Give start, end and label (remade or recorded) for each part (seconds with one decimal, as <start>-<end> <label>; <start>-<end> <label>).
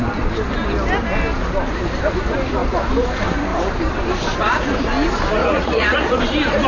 0.0-5.4 recorded; 5.4-6.2 remade; 6.2-6.7 recorded